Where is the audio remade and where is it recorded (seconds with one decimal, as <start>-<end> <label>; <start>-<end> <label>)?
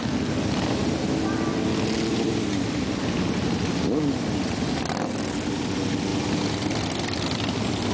0.0-7.9 recorded